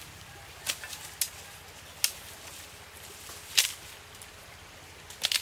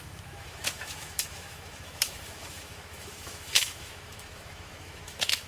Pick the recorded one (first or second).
first